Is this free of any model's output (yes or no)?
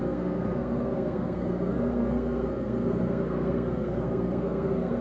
no